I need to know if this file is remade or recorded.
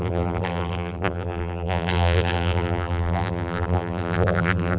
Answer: remade